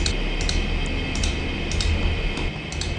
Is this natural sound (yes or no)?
yes